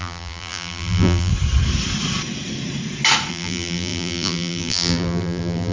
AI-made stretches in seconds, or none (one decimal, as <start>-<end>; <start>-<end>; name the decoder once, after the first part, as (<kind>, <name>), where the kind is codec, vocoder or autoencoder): 0.0-1.3 (vocoder, BigVGAN v2); 3.3-5.7